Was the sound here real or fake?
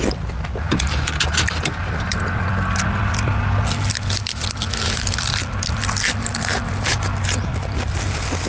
real